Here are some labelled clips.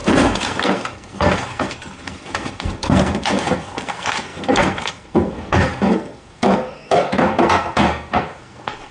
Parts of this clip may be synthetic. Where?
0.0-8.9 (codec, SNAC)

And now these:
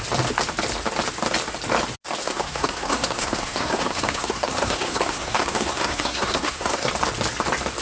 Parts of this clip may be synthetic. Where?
2.2-6.9 (codec, SNAC)

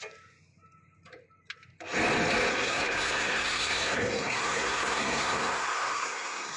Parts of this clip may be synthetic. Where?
2.5-6.6 (codec, SNAC)

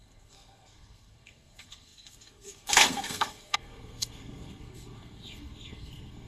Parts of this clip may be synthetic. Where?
0.0-6.3 (codec, SNAC)

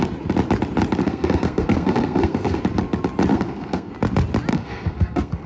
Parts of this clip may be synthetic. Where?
1.0-2.6 (codec, SNAC); 3.3-3.9; 4.5-5.5

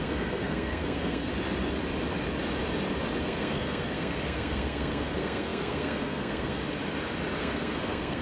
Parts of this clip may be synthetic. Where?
0.0-1.3 (codec, SNAC); 3.2-6.6; 7.4-8.2